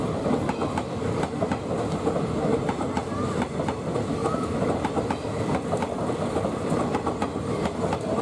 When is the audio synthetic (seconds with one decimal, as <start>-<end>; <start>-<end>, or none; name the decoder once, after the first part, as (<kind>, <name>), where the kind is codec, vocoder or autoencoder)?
2.5-3.6 (vocoder, BigVGAN v2); 4.2-5.1